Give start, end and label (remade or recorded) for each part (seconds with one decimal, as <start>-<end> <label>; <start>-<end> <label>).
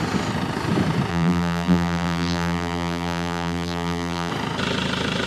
0.0-1.1 recorded; 1.1-4.3 remade; 4.3-5.3 recorded